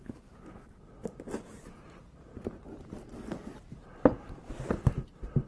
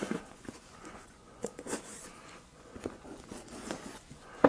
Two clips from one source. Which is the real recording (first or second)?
first